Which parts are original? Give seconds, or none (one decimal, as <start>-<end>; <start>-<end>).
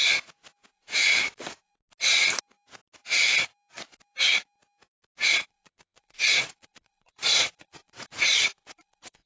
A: 0.0-0.7; 1.7-5.3